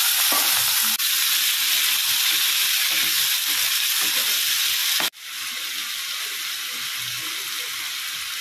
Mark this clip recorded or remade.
recorded